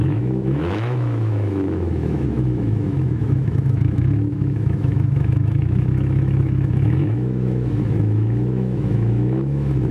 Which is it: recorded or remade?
remade